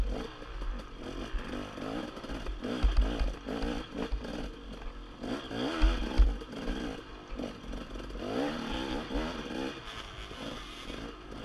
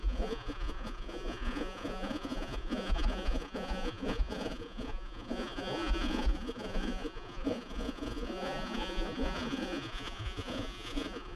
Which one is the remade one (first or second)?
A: second